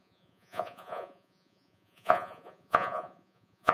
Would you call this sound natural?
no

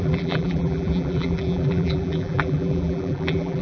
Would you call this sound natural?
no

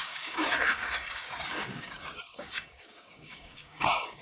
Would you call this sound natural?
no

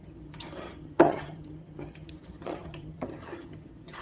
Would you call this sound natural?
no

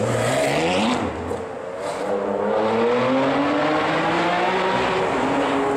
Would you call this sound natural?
yes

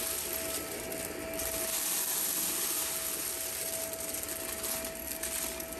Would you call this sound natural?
yes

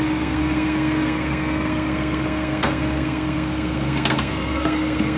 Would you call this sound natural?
no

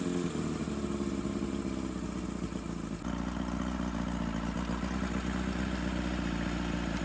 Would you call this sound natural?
yes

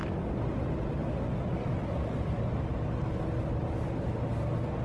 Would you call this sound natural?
yes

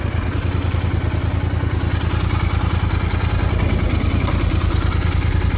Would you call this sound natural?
yes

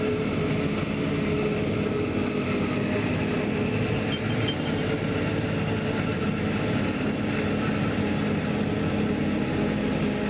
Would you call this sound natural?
yes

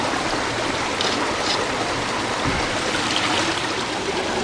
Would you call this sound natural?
yes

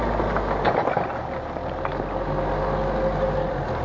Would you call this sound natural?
yes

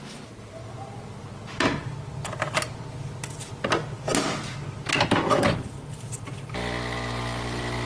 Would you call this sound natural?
yes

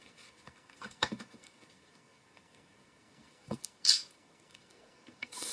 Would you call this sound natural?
no